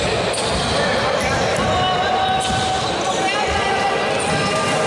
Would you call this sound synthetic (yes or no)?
no